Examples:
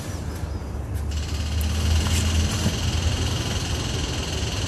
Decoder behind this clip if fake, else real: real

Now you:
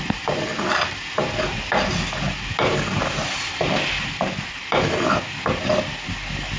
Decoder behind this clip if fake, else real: real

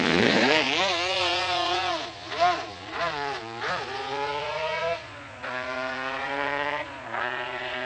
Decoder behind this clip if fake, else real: fake, vocoder, Vocos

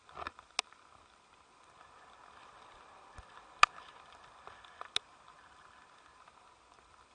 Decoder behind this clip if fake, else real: real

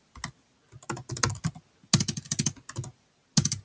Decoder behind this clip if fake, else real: real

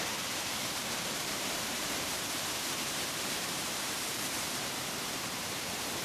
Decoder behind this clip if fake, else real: fake, vocoder, BigVGAN v2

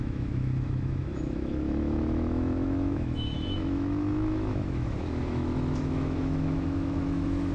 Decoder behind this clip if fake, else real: fake, autoencoder, DAC-VAE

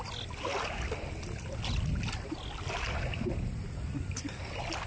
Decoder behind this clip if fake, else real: real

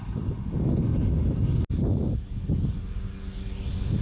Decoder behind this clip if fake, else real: real